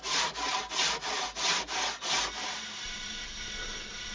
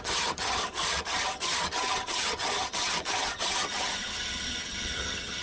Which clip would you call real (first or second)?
first